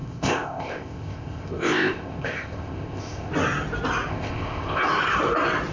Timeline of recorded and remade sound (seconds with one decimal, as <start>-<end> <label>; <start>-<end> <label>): 0.0-3.3 remade; 3.3-4.1 recorded; 4.1-4.8 remade; 4.8-5.7 recorded